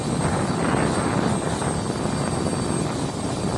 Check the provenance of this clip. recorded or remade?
recorded